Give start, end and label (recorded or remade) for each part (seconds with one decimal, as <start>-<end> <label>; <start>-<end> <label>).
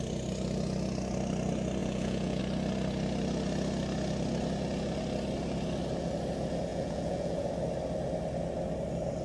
0.0-1.8 recorded; 1.8-2.4 remade; 2.4-6.7 recorded; 6.7-7.5 remade; 7.5-9.2 recorded